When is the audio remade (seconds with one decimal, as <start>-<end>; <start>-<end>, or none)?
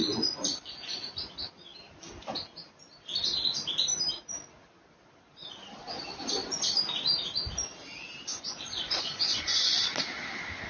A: 0.0-1.2; 8.3-9.8